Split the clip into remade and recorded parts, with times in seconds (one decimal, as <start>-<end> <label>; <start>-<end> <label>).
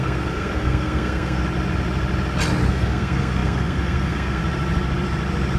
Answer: 0.0-1.4 remade; 1.4-2.7 recorded; 2.7-4.4 remade; 4.4-5.6 recorded